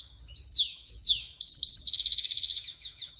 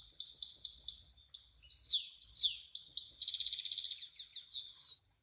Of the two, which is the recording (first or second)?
second